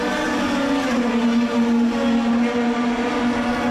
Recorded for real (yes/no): yes